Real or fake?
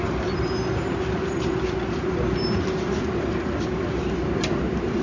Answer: real